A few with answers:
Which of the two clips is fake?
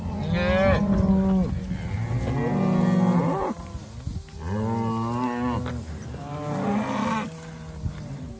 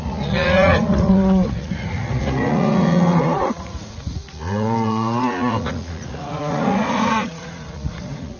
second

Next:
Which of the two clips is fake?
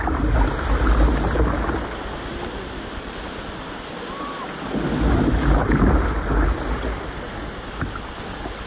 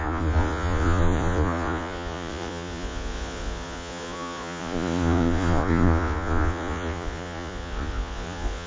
second